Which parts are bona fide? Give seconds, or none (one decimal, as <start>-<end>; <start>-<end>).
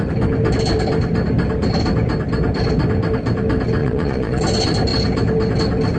0.0-3.8; 4.4-6.0